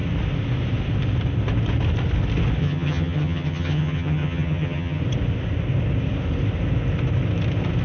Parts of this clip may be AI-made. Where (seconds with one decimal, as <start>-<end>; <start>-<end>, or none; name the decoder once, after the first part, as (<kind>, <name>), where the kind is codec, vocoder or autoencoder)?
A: 2.6-5.0 (vocoder, HiFi-GAN)

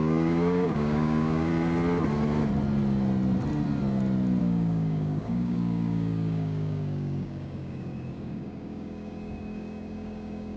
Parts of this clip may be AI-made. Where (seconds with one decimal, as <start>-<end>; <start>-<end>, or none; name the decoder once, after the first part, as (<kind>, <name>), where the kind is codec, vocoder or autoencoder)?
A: 0.0-1.5 (codec, DAC); 4.4-10.6